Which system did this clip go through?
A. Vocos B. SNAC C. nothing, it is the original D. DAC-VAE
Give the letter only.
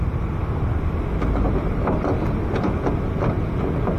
C